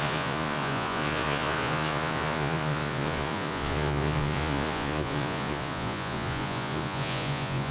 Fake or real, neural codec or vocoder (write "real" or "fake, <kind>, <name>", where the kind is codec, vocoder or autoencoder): fake, vocoder, Vocos